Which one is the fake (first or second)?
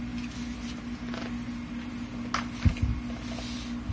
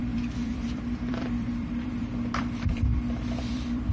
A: second